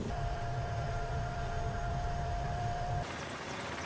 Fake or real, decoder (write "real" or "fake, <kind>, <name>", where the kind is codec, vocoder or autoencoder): fake, vocoder, BigVGAN v2